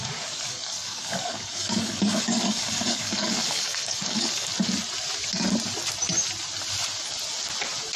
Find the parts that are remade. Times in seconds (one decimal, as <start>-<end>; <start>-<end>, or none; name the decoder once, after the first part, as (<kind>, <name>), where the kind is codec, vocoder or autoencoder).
0.0-4.5 (codec, DAC)